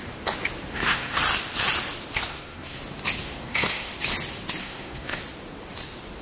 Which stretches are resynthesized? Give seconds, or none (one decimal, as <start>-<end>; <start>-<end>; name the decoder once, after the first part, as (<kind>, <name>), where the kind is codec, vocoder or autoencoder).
0.7-1.2 (codec, SNAC); 2.3-2.8; 3.2-3.9; 4.6-5.2